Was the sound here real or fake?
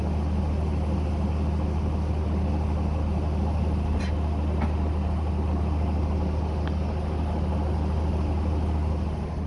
real